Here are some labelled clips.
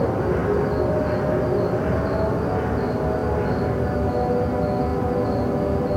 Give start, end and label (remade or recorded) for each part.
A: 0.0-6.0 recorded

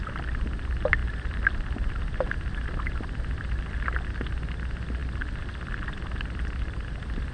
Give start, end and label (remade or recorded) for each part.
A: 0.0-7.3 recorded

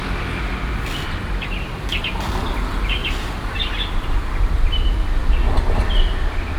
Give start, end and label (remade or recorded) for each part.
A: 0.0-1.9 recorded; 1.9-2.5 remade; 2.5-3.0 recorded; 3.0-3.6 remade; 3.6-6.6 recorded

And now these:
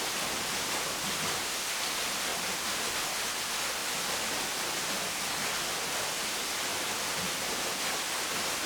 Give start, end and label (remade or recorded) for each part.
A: 0.0-2.3 recorded; 2.3-2.8 remade; 2.8-8.7 recorded

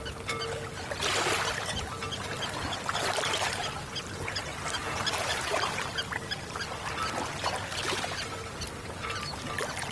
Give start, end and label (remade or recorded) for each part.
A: 0.0-2.6 recorded; 2.6-3.6 remade; 3.6-4.8 recorded; 4.8-6.6 remade; 6.6-9.9 recorded

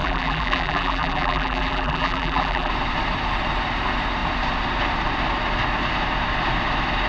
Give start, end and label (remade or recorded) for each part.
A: 0.0-2.7 remade; 2.7-7.1 recorded